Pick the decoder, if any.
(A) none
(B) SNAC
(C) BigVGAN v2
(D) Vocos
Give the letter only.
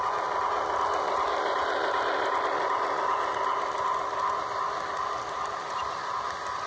A